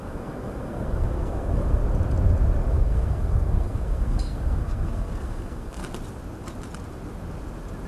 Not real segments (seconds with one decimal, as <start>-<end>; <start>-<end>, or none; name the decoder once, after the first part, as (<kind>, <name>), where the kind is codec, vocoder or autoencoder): 0.0-1.8 (codec, SNAC); 2.7-5.8